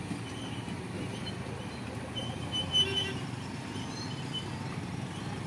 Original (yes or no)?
yes